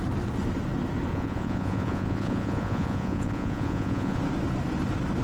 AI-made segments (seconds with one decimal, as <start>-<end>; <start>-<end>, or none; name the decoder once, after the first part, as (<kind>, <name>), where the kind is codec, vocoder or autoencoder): 1.1-4.2 (vocoder, Vocos)